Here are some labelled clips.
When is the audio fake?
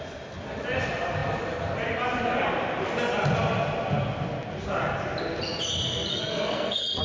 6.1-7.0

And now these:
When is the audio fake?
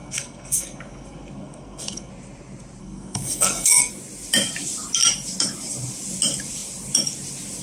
0.0-2.1; 2.8-3.9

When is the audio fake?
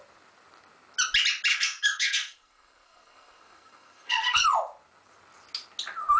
1.5-4.4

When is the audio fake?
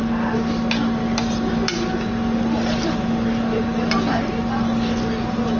none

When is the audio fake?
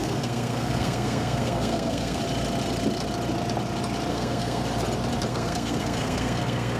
0.0-2.2; 4.1-4.6; 5.3-6.8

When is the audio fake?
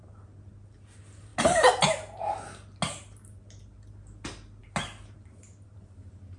none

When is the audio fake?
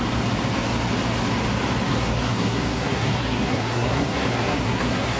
1.9-5.2